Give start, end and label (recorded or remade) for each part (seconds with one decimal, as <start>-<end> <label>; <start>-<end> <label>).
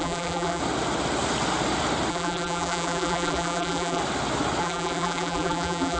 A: 0.0-0.6 remade; 0.6-2.1 recorded; 2.1-4.0 remade; 4.0-4.6 recorded; 4.6-6.0 remade